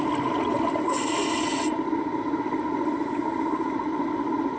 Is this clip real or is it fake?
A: real